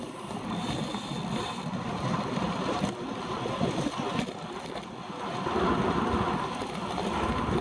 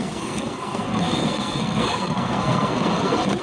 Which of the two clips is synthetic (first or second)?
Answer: second